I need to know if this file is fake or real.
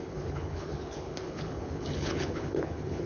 fake